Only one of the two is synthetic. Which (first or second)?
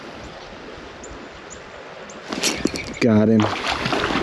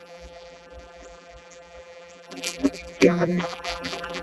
second